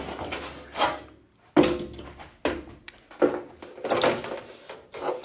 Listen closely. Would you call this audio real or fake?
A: real